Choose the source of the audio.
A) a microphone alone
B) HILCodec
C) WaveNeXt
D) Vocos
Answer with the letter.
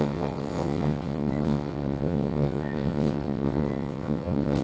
C